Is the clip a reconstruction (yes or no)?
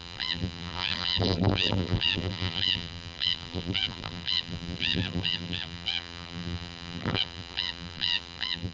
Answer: yes